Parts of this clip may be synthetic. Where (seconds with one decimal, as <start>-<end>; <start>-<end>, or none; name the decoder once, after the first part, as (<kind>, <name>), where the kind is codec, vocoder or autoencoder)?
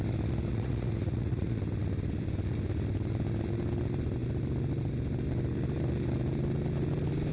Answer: 0.5-1.6 (vocoder, Vocos)